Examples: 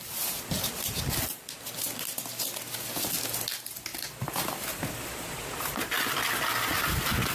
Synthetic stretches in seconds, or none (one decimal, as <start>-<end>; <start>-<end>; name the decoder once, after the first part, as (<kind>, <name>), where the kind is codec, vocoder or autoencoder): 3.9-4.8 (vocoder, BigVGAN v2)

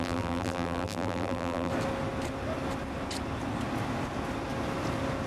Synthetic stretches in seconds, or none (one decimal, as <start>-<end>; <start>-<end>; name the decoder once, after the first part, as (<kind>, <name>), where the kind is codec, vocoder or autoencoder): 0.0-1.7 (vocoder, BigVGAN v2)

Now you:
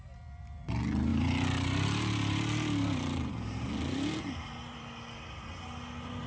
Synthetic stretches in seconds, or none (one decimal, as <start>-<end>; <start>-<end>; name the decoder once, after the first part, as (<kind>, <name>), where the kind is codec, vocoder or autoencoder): 1.1-4.9 (vocoder, BigVGAN v2)

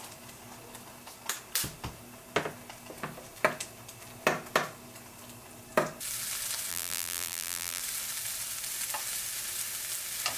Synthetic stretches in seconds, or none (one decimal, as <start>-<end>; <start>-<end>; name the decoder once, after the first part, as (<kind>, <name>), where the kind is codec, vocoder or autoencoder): 6.7-7.8 (vocoder, BigVGAN v2)

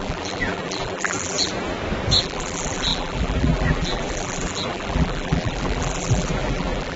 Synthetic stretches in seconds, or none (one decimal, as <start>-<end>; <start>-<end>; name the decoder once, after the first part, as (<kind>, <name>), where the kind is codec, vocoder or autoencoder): 0.0-1.5 (vocoder, BigVGAN v2); 2.2-7.0

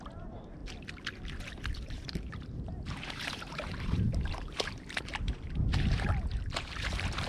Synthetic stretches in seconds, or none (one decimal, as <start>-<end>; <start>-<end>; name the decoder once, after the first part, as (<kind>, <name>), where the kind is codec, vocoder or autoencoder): 0.0-0.6 (vocoder, BigVGAN v2); 1.4-7.3